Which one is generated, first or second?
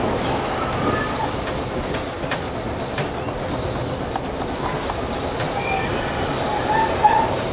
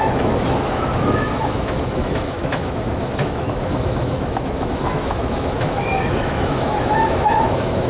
second